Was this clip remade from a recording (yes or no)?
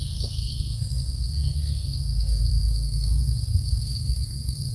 yes